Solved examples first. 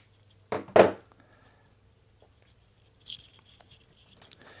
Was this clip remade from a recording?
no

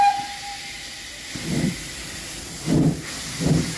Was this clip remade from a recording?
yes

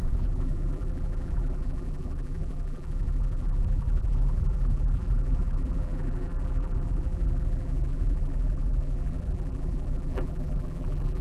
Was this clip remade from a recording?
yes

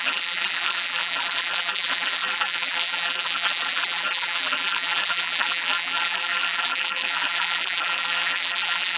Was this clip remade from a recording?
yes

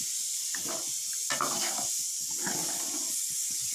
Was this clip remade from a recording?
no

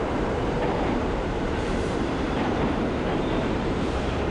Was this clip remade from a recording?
yes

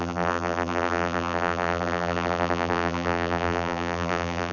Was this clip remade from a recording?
yes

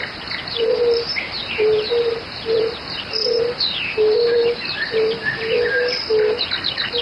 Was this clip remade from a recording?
yes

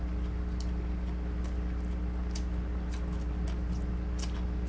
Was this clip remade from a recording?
no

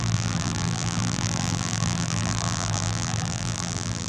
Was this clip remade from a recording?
yes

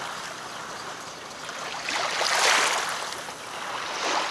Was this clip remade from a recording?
no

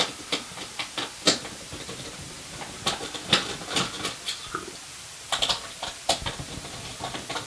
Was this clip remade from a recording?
yes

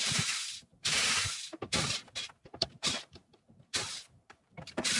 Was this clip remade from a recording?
yes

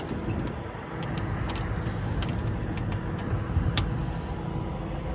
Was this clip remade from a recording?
no